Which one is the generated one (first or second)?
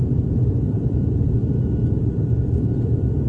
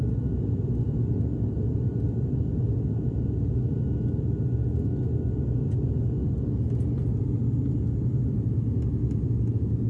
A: first